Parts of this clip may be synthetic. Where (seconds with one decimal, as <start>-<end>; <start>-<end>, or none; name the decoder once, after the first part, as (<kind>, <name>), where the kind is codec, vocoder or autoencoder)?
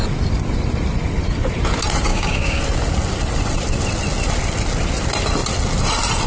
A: 2.1-2.6 (codec, DAC)